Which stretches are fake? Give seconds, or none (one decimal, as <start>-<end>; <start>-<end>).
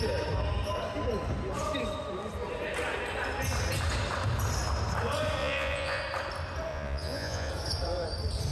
5.4-6.0; 6.7-7.5